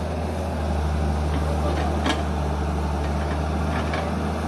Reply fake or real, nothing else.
real